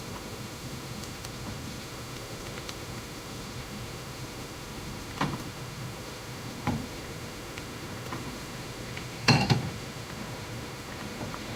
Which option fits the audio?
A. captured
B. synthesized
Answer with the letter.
B